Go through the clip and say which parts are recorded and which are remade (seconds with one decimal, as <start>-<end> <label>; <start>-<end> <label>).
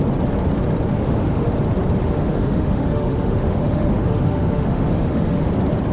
0.0-0.9 recorded; 0.9-1.5 remade; 1.5-2.0 recorded; 2.0-5.5 remade; 5.5-5.9 recorded